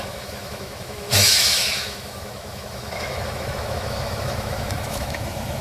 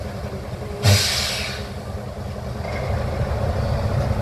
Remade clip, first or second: first